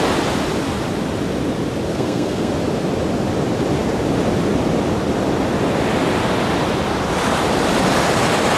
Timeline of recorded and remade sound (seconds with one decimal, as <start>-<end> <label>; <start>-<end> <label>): 0.0-1.9 recorded; 1.9-2.5 remade; 2.5-8.6 recorded